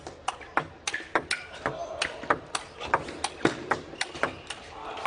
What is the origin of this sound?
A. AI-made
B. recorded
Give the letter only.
B